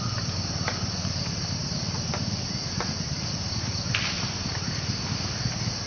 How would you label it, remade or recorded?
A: remade